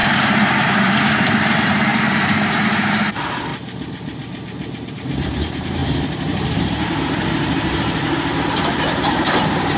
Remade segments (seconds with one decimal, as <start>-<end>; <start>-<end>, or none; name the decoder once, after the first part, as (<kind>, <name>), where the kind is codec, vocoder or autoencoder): 0.0-1.9 (vocoder, BigVGAN v2); 2.7-3.5; 4.9-5.8; 6.5-9.8